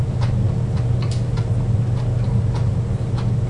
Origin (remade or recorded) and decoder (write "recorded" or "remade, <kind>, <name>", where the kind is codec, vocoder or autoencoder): recorded